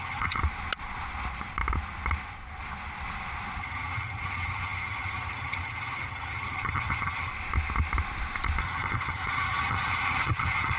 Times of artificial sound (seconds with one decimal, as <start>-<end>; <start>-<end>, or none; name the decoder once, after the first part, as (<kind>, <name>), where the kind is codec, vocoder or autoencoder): 0.0-0.4 (vocoder, HiFi-GAN); 3.6-7.3; 8.6-10.8